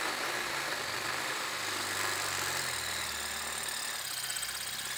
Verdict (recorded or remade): recorded